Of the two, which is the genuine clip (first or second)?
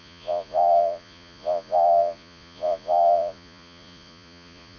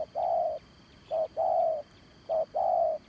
second